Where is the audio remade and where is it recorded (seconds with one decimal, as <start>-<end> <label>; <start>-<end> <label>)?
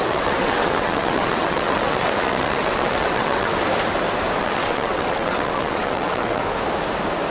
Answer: 0.0-3.5 remade; 3.5-4.4 recorded; 4.4-6.4 remade; 6.4-7.3 recorded